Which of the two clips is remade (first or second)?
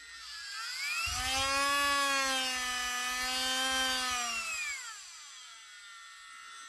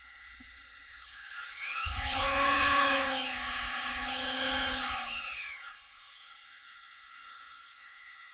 second